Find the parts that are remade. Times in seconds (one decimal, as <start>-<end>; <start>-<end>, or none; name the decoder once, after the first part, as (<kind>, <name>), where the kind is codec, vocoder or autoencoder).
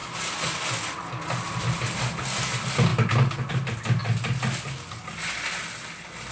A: none